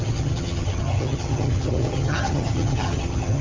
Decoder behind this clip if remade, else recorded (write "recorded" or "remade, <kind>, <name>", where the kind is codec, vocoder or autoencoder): remade, vocoder, HiFi-GAN